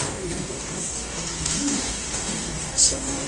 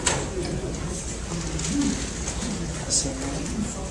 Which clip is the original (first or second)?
second